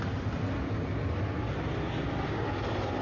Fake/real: real